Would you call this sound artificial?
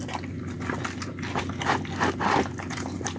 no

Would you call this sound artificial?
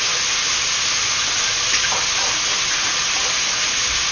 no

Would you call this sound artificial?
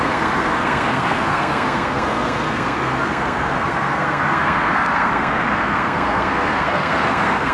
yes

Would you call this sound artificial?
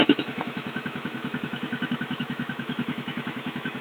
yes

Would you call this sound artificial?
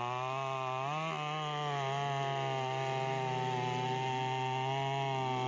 no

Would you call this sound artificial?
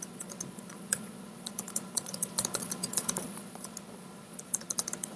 yes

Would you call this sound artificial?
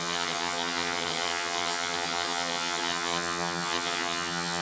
yes